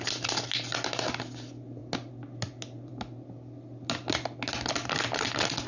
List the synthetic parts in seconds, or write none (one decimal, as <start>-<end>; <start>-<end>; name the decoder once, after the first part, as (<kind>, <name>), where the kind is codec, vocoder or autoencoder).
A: none